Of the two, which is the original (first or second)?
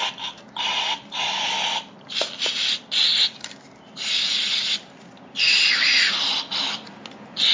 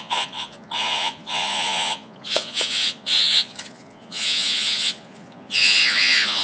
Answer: first